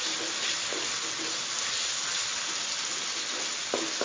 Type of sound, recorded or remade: recorded